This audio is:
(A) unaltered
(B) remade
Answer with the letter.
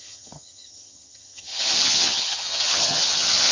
B